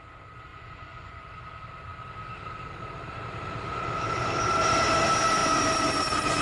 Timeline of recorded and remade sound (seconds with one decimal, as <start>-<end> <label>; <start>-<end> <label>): 0.0-0.5 recorded; 0.5-1.3 remade; 1.3-6.4 recorded